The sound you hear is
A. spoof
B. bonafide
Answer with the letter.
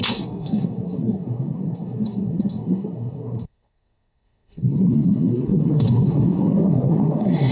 A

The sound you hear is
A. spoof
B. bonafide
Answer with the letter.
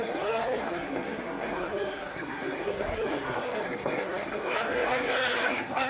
A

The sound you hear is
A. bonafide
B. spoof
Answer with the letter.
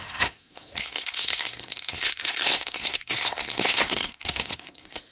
B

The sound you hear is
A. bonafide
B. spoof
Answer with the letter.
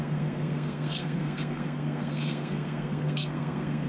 B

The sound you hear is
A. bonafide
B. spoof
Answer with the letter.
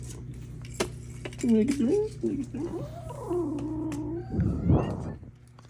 A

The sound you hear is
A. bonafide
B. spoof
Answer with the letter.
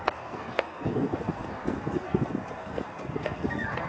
B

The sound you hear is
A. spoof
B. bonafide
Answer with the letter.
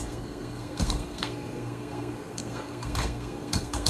A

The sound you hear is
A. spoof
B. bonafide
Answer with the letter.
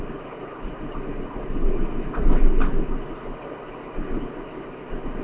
B